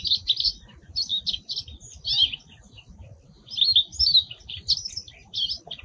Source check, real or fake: real